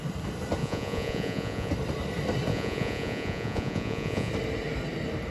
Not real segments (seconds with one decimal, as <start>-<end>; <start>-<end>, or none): 0.6-1.7; 2.5-4.3